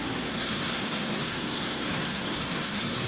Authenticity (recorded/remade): remade